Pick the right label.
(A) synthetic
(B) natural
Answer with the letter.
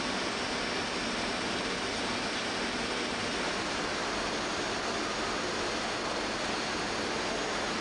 B